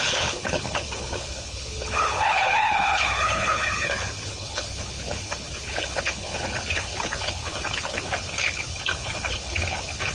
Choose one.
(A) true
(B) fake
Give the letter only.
B